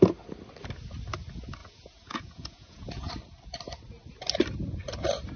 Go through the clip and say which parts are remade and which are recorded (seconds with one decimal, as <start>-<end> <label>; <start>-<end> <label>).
0.0-1.6 recorded; 1.6-3.1 remade; 3.1-5.4 recorded

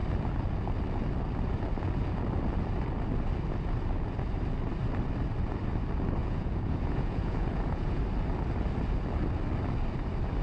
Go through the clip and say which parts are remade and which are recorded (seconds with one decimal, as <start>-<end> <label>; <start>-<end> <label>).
0.0-6.2 recorded; 6.2-8.0 remade; 8.0-10.4 recorded

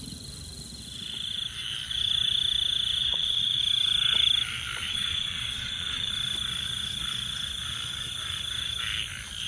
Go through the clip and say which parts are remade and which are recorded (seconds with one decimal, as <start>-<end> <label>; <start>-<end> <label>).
0.0-3.0 recorded; 3.0-3.6 remade; 3.6-4.8 recorded; 4.8-6.1 remade; 6.1-9.5 recorded

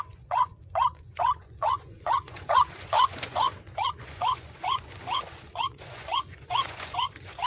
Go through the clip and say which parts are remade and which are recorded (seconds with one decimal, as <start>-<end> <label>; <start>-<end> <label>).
0.0-7.5 remade

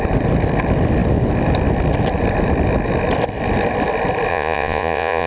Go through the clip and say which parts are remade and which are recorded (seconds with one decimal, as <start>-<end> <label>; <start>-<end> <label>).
0.0-4.3 recorded; 4.3-5.3 remade